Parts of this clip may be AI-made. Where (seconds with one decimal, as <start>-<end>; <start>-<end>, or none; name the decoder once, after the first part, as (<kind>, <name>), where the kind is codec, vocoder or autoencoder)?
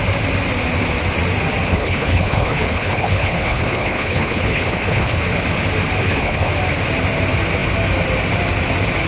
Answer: 1.7-5.2 (codec, HILCodec); 6.0-6.5